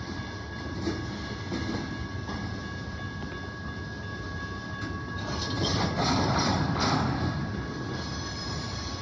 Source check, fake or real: real